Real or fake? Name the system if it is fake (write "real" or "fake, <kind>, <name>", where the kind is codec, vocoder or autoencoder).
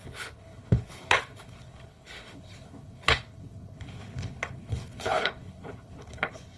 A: fake, codec, HILCodec